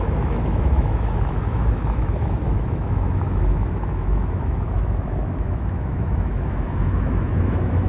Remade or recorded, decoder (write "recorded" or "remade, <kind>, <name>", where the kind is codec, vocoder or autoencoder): remade, autoencoder, DAC-VAE